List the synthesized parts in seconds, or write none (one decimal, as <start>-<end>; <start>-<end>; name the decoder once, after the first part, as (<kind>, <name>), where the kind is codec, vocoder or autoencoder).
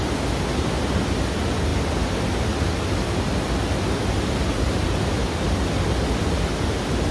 none